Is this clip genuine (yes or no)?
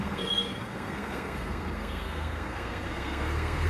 no